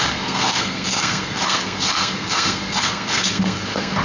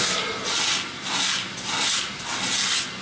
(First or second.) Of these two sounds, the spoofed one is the first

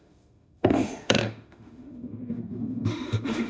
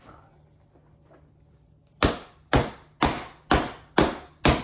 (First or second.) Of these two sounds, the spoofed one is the first